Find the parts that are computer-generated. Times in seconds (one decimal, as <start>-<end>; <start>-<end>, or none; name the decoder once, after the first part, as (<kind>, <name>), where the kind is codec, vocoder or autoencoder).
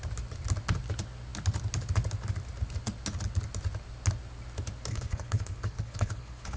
4.9-6.6 (codec, HILCodec)